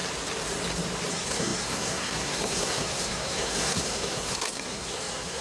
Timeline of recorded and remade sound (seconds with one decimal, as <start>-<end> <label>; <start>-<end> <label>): 0.0-1.1 recorded; 1.1-5.4 remade